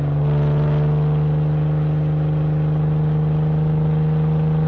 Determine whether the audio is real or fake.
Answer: real